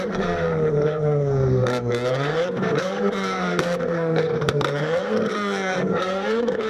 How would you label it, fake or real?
fake